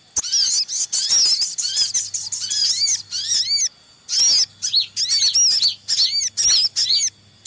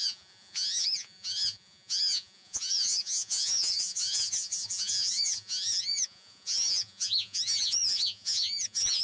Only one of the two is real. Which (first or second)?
first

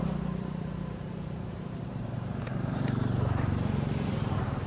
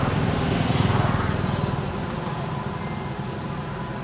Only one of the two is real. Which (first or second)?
second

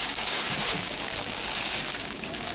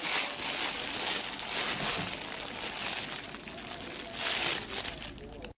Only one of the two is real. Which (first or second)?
second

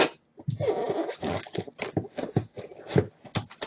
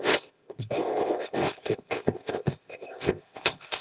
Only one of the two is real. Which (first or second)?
first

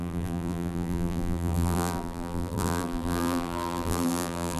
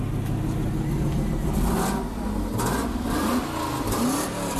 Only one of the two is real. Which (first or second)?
second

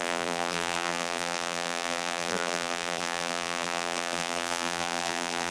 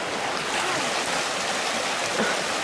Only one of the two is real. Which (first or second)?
second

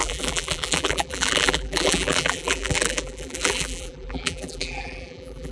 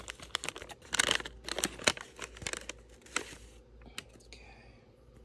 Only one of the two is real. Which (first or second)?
second